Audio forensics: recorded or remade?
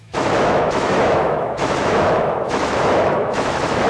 remade